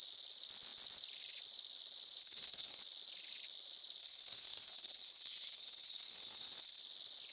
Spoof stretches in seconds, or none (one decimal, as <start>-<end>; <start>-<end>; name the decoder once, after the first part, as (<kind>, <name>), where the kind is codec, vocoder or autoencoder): 2.2-2.8 (codec, SNAC); 4.0-6.8